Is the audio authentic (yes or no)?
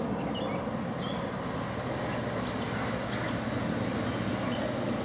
yes